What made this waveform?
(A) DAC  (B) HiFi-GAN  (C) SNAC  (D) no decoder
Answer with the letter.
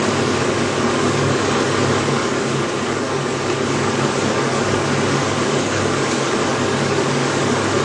A